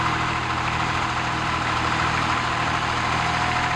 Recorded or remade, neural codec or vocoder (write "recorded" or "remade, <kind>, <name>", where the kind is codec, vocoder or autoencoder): recorded